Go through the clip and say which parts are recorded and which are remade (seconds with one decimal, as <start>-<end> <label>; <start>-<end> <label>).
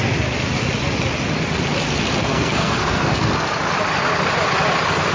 0.0-2.2 recorded; 2.2-3.3 remade; 3.3-5.1 recorded